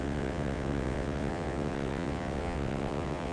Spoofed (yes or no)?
yes